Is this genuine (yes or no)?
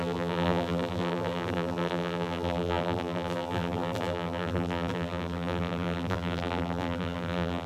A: no